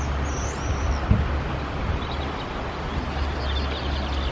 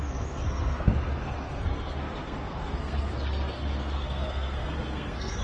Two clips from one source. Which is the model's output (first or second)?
second